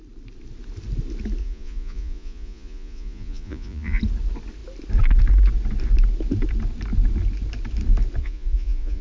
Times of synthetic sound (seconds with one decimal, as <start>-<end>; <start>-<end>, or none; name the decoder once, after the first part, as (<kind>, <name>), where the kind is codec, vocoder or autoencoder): 1.4-4.0 (vocoder, Vocos); 8.2-9.0